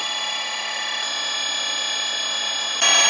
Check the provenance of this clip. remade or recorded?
recorded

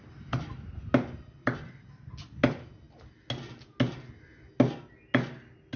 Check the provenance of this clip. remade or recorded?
recorded